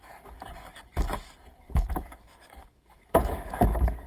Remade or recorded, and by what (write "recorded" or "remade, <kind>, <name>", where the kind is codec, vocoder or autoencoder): remade, codec, DAC